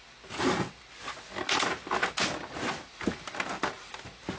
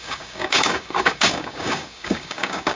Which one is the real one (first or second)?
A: first